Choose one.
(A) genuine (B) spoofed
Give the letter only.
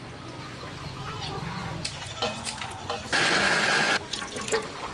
B